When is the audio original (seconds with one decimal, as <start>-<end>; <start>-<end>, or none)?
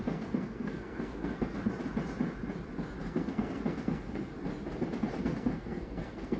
1.7-3.0; 4.3-5.2